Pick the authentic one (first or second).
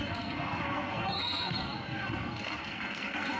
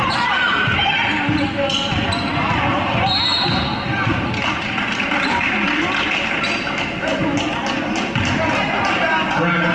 second